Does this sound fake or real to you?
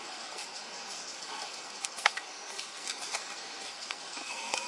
fake